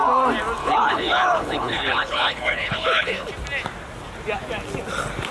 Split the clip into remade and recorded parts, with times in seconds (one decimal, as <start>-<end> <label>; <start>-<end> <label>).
0.0-0.6 recorded; 0.6-3.3 remade; 3.3-5.3 recorded